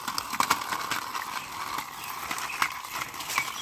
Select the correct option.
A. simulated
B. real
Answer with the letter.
B